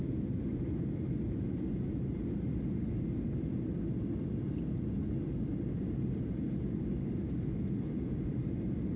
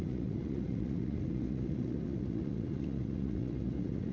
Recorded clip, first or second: first